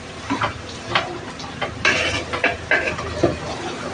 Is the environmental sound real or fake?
real